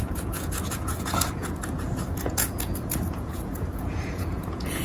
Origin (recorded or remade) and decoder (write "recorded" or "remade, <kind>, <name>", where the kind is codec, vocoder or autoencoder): remade, vocoder, Vocos